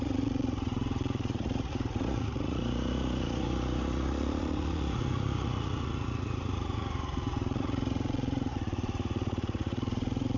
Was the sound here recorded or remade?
remade